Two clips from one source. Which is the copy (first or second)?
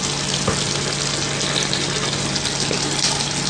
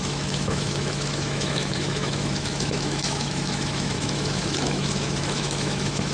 second